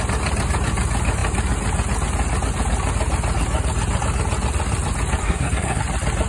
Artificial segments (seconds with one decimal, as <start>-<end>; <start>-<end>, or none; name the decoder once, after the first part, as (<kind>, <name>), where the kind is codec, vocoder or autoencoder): 5.2-5.8 (codec, SNAC)